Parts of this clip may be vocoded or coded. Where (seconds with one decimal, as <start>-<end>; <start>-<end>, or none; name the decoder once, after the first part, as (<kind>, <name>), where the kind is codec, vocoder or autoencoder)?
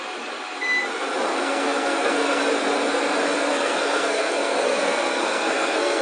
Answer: 1.3-2.4 (codec, SNAC); 3.5-6.0